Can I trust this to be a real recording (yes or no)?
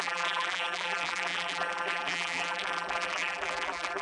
no